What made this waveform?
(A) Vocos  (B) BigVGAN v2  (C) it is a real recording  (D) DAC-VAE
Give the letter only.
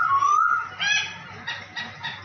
C